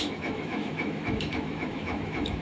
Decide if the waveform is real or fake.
fake